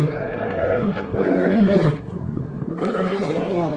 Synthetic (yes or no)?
yes